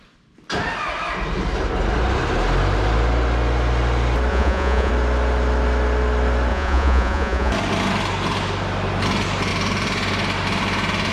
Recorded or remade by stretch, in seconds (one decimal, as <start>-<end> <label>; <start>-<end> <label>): 0.0-4.3 recorded; 4.3-4.9 remade; 4.9-6.5 recorded; 6.5-7.5 remade; 7.5-11.1 recorded